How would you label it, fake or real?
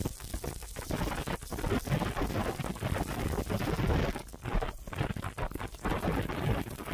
real